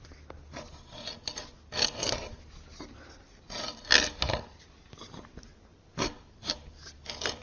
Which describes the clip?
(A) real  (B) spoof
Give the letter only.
A